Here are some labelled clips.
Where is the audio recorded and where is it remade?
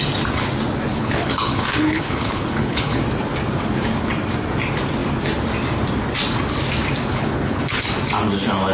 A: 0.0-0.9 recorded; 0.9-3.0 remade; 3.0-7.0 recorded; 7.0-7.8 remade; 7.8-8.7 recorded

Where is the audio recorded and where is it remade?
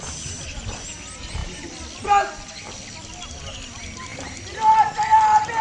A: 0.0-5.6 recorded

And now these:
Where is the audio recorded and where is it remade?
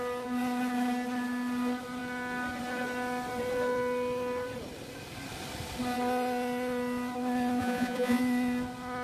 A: 0.0-7.6 recorded; 7.6-8.2 remade; 8.2-9.0 recorded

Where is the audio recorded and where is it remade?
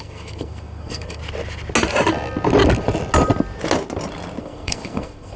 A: 0.0-1.2 remade; 1.2-4.4 recorded; 4.4-5.4 remade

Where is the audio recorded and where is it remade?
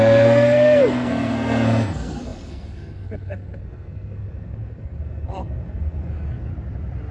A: 0.0-6.5 remade; 6.5-7.1 recorded